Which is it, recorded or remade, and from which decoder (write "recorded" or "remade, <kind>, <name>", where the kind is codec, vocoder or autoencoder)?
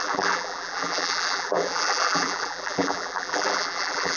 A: remade, vocoder, BigVGAN v2